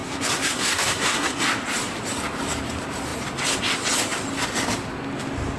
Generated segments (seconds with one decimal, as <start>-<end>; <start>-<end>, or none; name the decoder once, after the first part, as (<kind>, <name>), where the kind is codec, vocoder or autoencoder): 0.0-1.4 (codec, SNAC)